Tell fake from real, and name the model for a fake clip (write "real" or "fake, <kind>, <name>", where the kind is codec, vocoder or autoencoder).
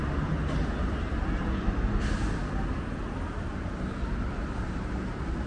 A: real